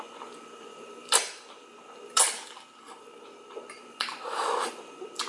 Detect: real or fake fake